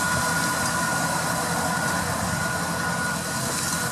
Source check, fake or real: real